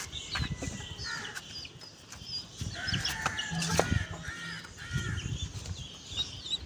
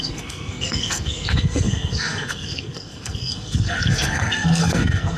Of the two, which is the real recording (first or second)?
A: first